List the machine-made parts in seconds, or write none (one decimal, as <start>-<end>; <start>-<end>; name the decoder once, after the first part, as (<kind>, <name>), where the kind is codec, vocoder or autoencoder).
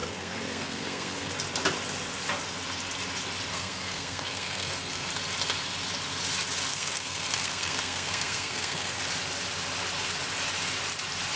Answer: 0.0-1.3 (codec, SNAC); 3.5-5.1; 6.7-9.0